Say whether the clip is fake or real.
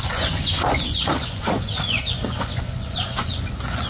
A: fake